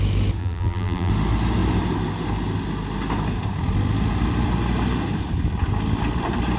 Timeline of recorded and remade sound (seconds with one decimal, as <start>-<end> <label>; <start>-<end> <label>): 0.0-0.4 recorded; 0.4-1.1 remade; 1.1-6.6 recorded